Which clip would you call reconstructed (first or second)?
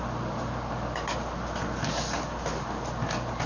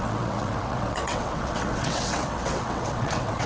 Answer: second